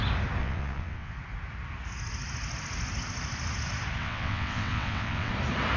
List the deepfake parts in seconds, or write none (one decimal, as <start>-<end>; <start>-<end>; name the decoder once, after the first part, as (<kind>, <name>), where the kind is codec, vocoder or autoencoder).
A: 0.4-1.1 (vocoder, WaveNeXt); 4.0-5.3